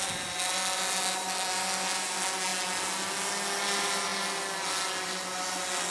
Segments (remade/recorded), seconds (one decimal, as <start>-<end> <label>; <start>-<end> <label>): 0.0-5.9 recorded